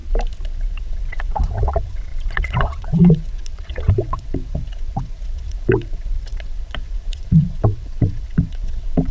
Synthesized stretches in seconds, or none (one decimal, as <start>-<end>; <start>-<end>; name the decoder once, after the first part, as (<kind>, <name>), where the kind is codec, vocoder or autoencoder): 0.8-9.1 (vocoder, WaveNeXt)